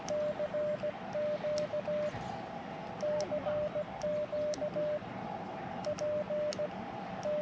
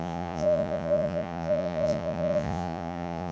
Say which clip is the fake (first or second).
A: second